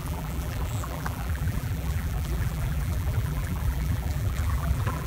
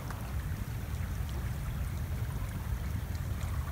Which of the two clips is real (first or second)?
second